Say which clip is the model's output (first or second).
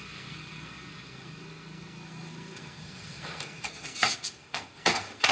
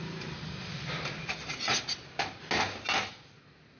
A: first